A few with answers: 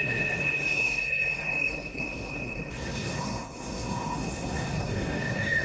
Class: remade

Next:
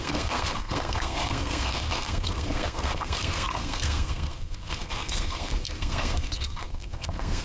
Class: remade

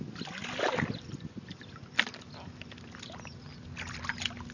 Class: recorded